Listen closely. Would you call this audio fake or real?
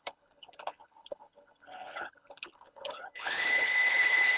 fake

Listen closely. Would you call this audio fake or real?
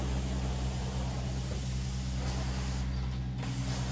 real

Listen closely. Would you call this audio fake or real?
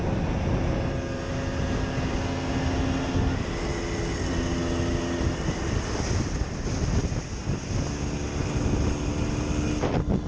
real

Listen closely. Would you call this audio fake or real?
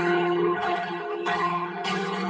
fake